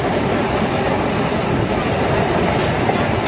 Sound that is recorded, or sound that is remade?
recorded